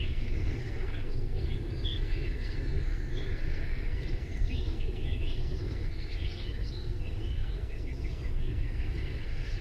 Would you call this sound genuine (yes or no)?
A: no